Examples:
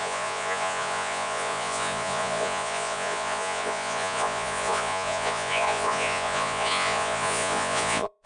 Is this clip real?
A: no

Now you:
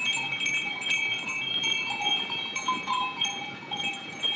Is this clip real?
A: no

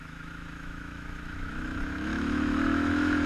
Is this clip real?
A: no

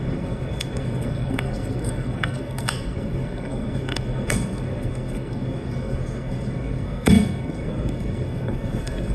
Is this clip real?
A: no